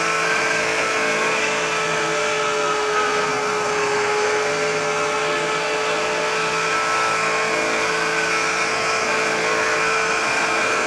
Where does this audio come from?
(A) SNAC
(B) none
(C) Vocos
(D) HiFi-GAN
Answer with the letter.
A